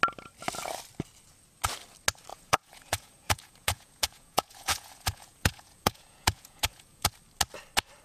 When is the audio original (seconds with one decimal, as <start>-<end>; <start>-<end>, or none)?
0.0-2.3; 7.1-8.0